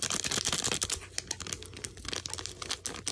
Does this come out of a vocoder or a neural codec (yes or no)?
no